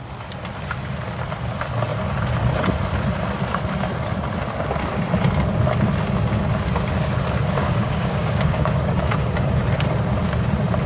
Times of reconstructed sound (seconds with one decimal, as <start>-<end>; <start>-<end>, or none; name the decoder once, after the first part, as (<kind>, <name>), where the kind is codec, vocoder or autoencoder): 7.6-9.1 (codec, DAC)